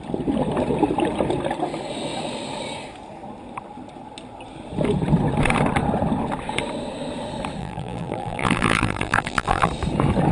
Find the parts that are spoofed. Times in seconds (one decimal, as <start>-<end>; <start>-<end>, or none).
7.6-9.7